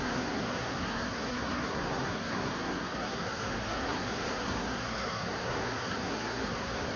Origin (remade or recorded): remade